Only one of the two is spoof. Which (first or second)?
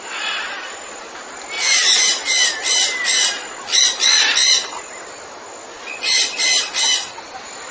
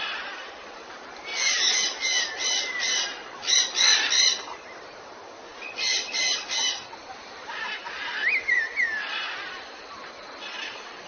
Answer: second